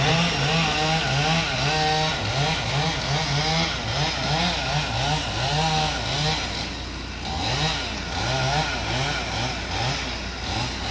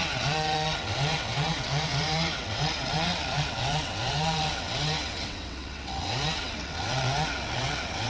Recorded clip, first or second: first